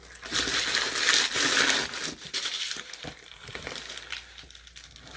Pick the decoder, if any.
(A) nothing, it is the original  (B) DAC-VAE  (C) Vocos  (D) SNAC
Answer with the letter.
A